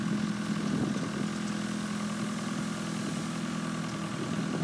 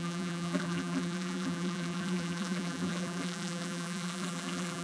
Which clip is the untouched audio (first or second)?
first